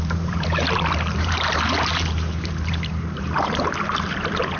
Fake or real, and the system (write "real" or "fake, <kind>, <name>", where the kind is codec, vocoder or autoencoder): fake, vocoder, BigVGAN v2